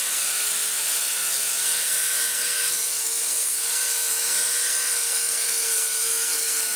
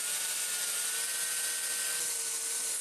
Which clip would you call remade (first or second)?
first